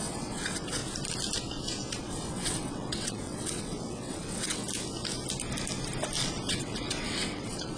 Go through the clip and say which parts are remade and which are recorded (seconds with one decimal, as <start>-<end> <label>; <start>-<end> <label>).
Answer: 0.0-0.8 remade; 0.8-2.0 recorded; 2.0-4.6 remade; 4.6-6.5 recorded; 6.5-7.8 remade